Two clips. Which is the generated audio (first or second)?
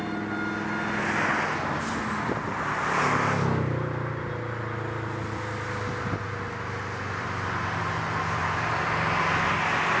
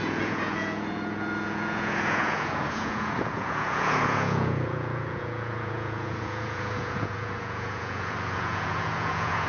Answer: second